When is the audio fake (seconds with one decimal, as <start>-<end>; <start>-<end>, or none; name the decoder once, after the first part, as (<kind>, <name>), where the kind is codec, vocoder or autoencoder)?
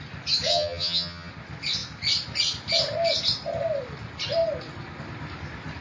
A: 0.5-1.3 (vocoder, HiFi-GAN)